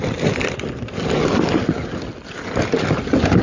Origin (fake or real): real